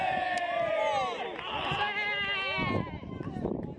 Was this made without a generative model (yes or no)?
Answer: yes